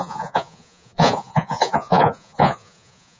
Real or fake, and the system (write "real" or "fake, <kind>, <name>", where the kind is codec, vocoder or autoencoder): fake, vocoder, Vocos